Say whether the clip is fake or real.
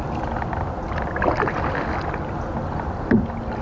real